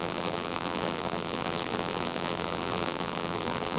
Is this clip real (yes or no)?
no